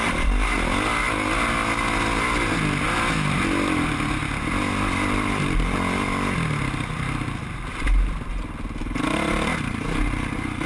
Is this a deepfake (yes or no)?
no